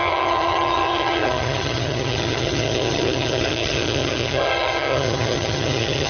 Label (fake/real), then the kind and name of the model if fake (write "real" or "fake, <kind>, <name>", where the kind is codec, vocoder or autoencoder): fake, vocoder, HiFi-GAN